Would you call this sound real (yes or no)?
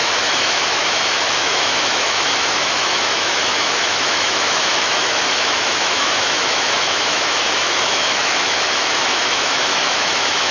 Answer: no